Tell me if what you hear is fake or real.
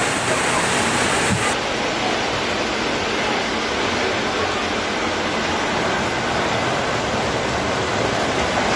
real